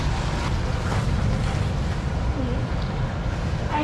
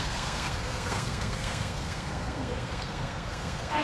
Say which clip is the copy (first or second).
second